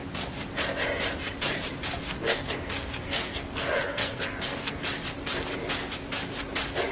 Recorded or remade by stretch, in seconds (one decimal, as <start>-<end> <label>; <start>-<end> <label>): 0.0-2.1 recorded; 2.1-4.8 remade; 4.8-6.9 recorded

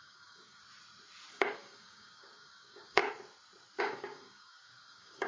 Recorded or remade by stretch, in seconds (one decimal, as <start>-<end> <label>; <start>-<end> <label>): 0.0-0.6 remade; 0.6-1.3 recorded; 1.3-3.0 remade; 3.0-3.8 recorded; 3.8-5.3 remade

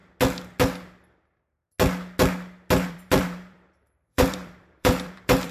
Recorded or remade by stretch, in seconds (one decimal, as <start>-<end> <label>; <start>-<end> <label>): 0.0-2.9 recorded; 2.9-5.5 remade

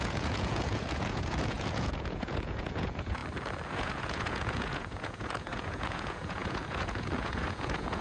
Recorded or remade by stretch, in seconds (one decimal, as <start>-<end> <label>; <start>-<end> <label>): 0.0-3.2 remade; 3.2-3.7 recorded; 3.7-8.0 remade

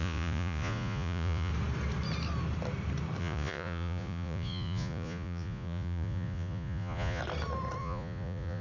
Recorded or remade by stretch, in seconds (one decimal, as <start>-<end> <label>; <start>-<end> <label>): 0.0-1.5 remade; 1.5-3.2 recorded; 3.2-7.2 remade; 7.2-7.8 recorded; 7.8-8.6 remade

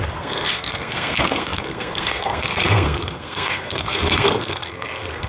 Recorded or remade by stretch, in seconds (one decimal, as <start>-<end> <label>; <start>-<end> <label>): 0.0-5.3 remade